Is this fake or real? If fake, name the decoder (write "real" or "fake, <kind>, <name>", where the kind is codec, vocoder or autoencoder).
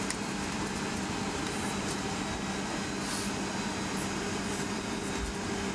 real